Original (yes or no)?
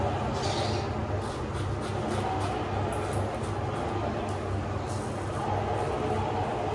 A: yes